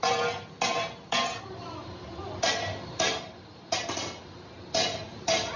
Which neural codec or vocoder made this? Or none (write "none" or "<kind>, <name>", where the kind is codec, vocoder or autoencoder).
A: none